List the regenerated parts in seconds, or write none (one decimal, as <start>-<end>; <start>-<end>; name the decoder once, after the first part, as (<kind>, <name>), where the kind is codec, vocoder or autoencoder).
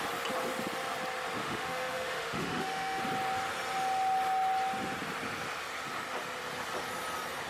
1.4-3.0 (autoencoder, DAC-VAE)